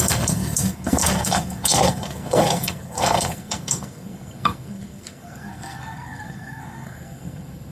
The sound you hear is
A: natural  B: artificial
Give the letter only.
B